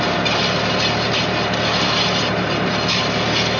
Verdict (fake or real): real